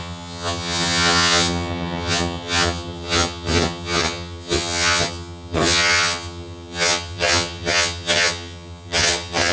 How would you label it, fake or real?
fake